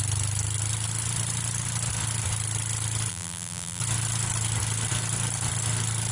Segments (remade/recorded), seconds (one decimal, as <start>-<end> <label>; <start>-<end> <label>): 0.0-3.1 recorded; 3.1-3.8 remade; 3.8-6.1 recorded